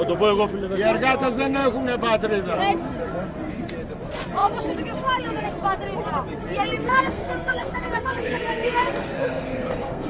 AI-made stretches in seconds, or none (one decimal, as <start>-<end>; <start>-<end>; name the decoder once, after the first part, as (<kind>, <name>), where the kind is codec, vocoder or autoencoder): 6.8-10.1 (codec, SNAC)